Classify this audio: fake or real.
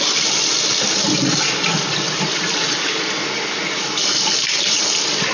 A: real